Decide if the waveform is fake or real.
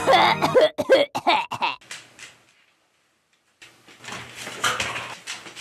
real